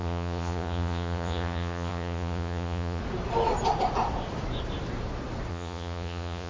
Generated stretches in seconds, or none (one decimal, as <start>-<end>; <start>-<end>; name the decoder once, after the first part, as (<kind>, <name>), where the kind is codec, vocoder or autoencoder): 0.0-3.0 (vocoder, Vocos); 5.5-6.5